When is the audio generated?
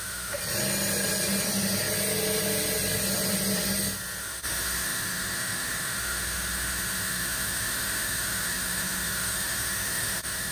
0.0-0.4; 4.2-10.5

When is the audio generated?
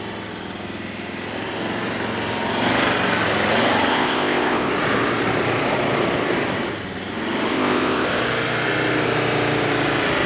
3.9-4.7; 7.5-8.2